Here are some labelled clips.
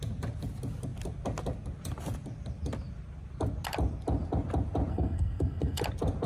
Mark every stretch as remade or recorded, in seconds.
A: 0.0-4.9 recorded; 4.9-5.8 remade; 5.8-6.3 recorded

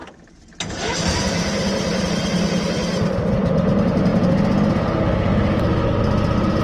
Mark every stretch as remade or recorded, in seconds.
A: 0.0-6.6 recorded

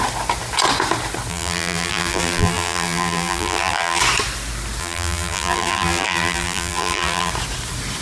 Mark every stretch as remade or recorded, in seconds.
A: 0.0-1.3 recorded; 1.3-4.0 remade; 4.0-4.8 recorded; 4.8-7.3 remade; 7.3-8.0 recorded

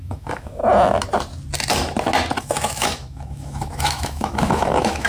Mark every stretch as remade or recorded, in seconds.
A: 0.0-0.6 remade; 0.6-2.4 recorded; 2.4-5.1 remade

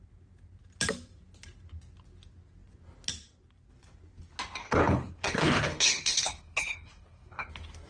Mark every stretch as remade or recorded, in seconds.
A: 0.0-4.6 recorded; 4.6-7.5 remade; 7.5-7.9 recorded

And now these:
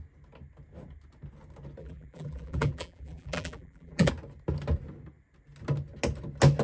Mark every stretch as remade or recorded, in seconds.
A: 0.0-1.8 recorded; 1.8-4.1 remade; 4.1-6.6 recorded

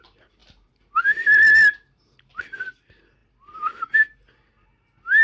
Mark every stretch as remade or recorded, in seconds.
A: 0.0-5.2 recorded

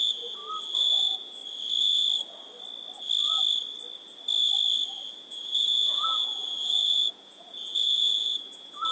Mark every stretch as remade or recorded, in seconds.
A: 0.0-0.4 remade; 0.4-1.0 recorded; 1.0-1.4 remade; 1.4-5.2 recorded; 5.2-8.9 remade